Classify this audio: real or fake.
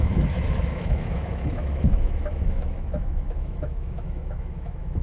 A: fake